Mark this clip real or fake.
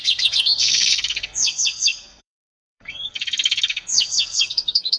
fake